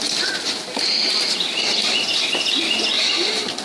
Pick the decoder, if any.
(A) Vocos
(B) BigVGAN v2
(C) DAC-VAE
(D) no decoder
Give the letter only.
D